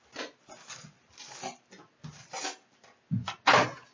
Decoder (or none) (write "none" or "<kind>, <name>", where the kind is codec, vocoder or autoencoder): none